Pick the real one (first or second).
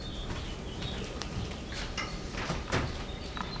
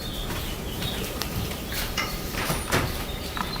first